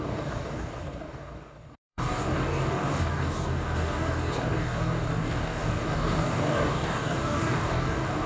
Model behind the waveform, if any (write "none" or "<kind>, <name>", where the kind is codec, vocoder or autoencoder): codec, DAC